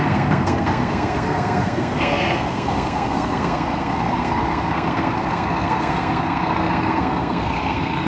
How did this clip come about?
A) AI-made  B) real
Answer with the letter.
A